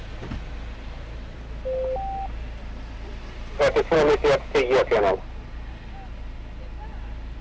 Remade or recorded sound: recorded